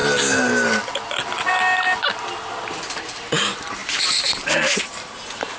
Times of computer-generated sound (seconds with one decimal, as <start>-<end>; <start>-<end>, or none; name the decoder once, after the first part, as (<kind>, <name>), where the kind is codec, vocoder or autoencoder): 3.4-5.6 (vocoder, BigVGAN v2)